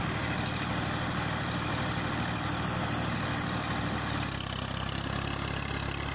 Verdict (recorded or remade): recorded